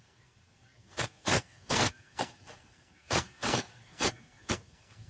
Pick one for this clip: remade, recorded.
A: remade